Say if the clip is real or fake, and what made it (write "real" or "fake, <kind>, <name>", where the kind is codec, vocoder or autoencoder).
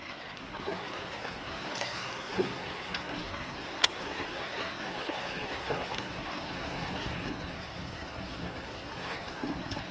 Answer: fake, codec, SNAC